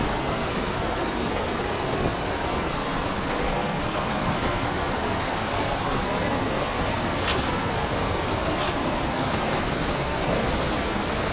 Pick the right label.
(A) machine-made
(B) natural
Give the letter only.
A